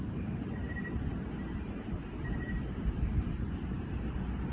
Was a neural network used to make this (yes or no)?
no